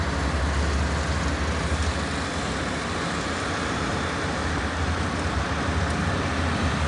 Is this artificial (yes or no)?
no